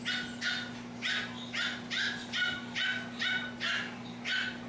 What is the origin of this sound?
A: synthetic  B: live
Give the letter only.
B